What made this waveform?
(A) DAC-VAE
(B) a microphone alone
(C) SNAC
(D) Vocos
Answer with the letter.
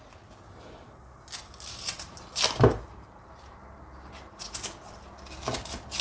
B